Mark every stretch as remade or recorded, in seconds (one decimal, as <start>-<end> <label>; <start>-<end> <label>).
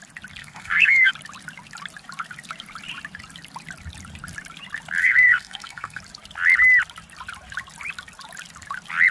0.0-0.4 recorded; 0.4-1.1 remade; 1.1-5.0 recorded; 5.0-6.0 remade; 6.0-9.1 recorded